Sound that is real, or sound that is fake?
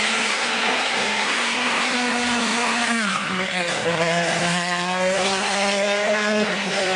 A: fake